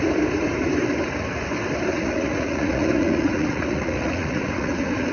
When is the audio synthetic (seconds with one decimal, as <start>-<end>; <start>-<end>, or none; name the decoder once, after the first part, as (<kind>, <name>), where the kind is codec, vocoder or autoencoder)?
1.9-5.1 (vocoder, Vocos)